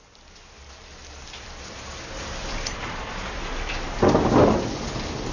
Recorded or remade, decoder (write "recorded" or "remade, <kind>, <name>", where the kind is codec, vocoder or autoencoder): recorded